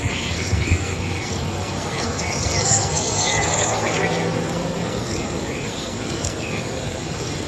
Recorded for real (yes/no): no